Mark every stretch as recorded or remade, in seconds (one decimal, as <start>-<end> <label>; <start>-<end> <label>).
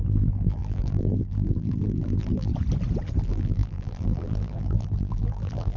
0.0-2.5 remade; 2.5-3.2 recorded; 3.2-5.8 remade